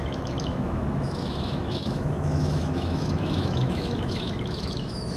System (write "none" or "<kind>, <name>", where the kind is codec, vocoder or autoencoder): autoencoder, DAC-VAE